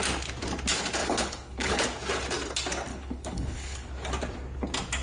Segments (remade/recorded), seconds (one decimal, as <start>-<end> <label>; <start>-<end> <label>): 0.0-1.0 recorded; 1.0-1.8 remade; 1.8-2.9 recorded; 2.9-3.9 remade; 3.9-5.0 recorded